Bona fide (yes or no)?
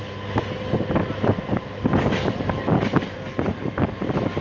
yes